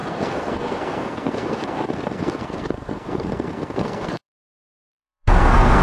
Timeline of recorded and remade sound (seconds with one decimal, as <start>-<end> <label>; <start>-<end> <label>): 0.0-5.8 remade